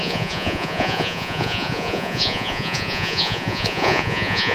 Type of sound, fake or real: fake